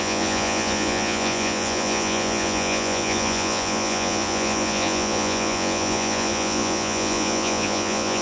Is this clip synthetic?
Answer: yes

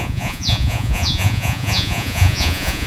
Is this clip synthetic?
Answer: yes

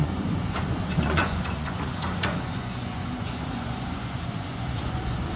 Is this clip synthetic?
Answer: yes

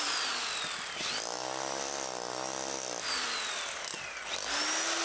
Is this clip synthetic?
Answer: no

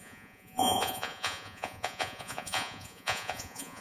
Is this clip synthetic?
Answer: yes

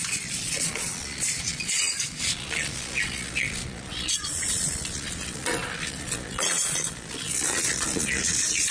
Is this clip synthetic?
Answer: yes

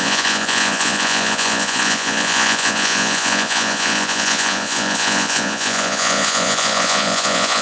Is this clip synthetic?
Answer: yes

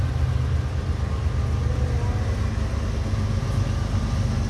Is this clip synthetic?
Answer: no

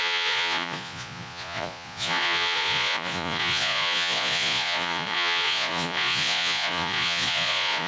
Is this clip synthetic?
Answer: yes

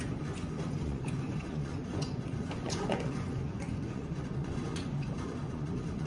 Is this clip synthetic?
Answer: yes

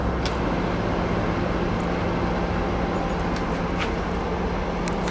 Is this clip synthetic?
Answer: no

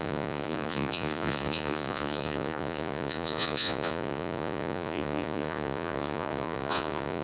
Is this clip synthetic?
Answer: yes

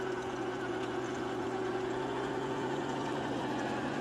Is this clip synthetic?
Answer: yes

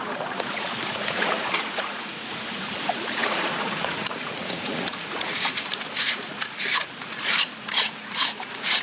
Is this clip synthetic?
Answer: yes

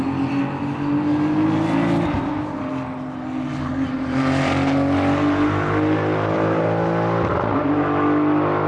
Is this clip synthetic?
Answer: no